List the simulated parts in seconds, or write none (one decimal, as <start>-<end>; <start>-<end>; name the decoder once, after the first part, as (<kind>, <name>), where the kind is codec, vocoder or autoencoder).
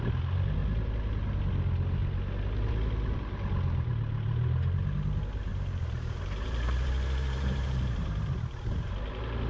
5.5-8.9 (vocoder, BigVGAN v2)